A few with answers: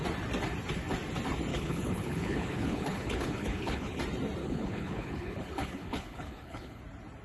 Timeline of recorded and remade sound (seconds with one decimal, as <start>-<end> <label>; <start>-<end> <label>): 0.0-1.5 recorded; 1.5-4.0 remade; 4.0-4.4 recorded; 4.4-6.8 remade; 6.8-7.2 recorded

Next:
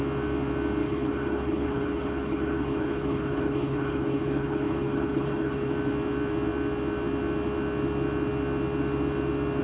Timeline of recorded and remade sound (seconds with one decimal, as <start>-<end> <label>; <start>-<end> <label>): 0.0-0.8 recorded; 0.8-5.7 remade; 5.7-9.6 recorded

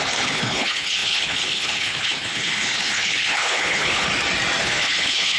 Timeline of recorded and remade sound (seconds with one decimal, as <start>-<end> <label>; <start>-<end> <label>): 0.0-4.1 remade; 4.1-4.6 recorded; 4.6-5.4 remade

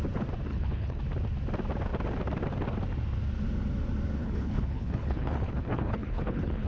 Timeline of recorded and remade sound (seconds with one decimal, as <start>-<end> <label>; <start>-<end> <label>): 0.0-0.5 recorded; 0.5-1.0 remade; 1.0-4.2 recorded; 4.2-6.7 remade

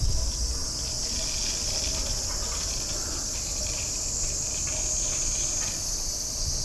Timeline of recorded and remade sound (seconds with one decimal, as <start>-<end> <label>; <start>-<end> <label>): 0.0-6.6 recorded